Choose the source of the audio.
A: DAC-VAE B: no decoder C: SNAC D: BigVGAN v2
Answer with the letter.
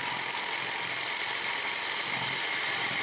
B